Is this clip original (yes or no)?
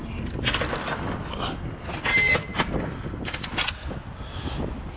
yes